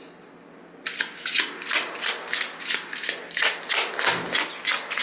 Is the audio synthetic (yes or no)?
no